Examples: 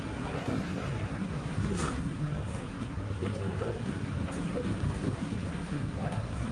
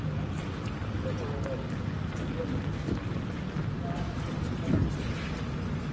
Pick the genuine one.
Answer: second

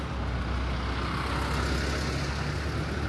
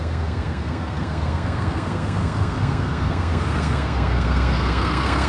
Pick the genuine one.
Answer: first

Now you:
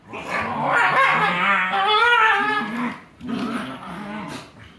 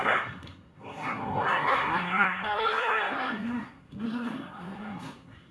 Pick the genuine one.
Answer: first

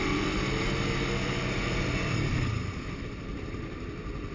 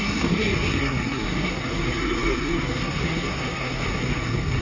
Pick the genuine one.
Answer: first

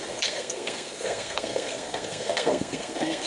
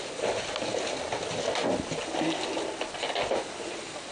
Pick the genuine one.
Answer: second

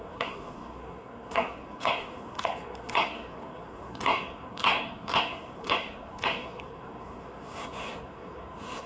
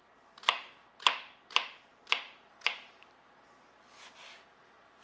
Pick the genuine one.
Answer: second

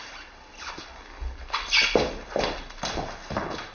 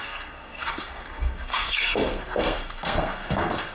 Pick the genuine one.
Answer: first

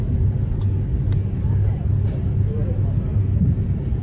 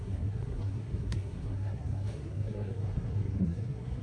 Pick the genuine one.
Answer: first